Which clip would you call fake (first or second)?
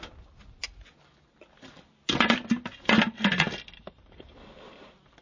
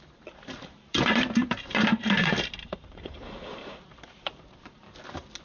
second